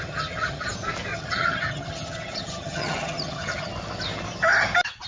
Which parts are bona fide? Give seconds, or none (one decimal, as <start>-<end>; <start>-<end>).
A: 0.7-1.1; 3.7-5.1